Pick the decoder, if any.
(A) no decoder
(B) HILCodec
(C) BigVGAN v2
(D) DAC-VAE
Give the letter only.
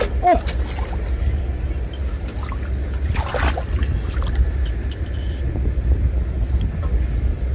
A